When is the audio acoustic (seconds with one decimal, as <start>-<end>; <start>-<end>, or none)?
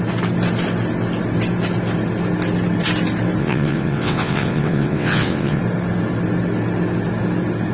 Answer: 0.0-3.4; 5.6-7.7